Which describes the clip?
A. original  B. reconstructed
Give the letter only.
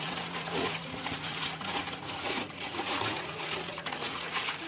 B